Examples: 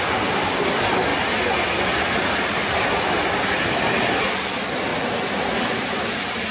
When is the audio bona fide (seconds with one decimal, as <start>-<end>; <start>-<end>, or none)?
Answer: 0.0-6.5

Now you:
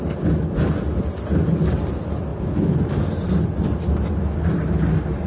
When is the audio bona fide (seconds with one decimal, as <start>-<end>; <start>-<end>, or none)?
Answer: 0.0-5.3

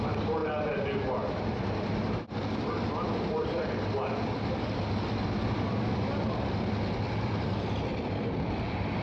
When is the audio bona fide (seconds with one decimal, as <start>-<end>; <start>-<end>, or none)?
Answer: 0.0-9.0

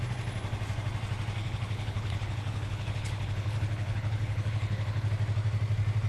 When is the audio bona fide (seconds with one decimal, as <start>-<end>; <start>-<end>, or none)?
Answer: 0.0-1.4; 5.1-6.1